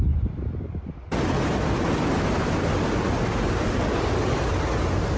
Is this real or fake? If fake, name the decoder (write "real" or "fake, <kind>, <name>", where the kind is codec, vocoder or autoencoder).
real